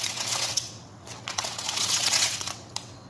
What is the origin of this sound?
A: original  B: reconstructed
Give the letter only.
B